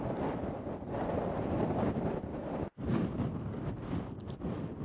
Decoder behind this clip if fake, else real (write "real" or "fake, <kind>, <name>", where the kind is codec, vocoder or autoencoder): real